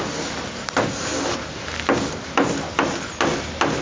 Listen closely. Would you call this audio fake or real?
real